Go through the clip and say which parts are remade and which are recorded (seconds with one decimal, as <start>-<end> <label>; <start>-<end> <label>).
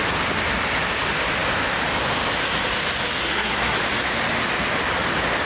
0.0-3.2 recorded; 3.2-3.8 remade; 3.8-5.5 recorded